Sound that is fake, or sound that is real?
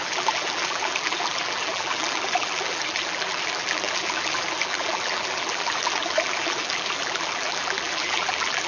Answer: fake